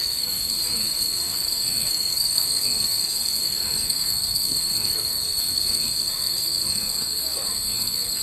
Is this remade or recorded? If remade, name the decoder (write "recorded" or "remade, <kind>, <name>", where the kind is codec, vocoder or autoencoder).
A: remade, codec, SNAC